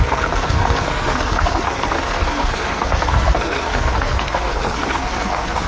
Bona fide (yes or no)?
no